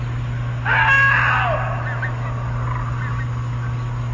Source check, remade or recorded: recorded